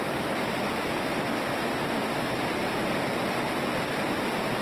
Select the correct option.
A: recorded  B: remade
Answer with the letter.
A